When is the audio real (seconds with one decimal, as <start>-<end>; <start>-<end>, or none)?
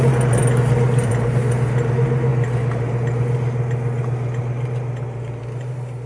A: 0.0-6.1